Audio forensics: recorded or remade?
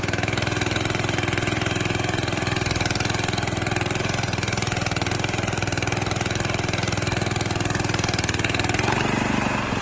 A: remade